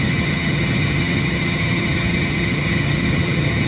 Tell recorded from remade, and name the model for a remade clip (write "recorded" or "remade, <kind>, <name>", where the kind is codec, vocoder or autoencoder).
remade, vocoder, HiFi-GAN